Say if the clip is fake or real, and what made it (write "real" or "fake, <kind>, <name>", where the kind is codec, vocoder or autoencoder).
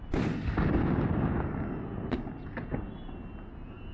real